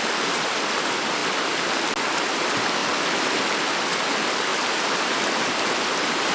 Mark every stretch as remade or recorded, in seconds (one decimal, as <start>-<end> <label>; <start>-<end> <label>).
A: 0.0-6.3 recorded